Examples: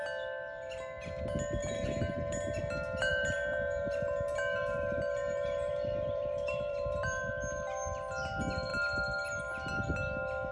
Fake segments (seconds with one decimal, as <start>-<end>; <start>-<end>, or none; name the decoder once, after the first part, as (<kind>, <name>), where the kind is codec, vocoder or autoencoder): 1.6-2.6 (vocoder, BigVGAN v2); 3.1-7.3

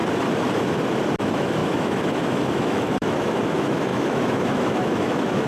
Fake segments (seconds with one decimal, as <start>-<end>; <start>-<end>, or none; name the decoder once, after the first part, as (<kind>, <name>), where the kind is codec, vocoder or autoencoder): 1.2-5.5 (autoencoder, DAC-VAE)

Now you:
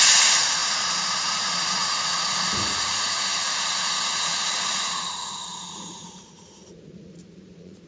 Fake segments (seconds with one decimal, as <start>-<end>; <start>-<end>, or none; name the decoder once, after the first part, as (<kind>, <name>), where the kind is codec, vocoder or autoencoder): 0.0-7.9 (vocoder, Vocos)